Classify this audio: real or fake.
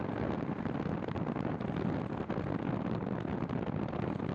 real